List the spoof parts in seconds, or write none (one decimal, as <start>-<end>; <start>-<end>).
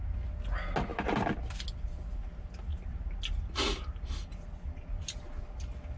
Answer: none